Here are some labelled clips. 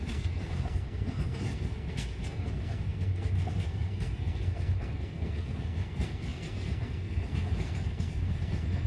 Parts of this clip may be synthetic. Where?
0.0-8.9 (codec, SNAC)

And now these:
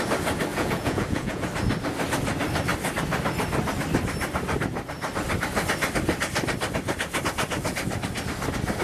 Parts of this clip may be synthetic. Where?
0.5-1.4 (vocoder, Vocos)

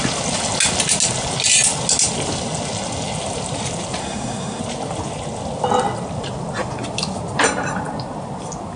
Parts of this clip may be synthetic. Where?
4.0-4.6 (codec, SNAC)